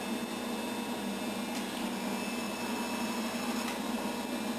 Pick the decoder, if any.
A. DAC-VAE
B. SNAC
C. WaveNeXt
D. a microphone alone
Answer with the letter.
D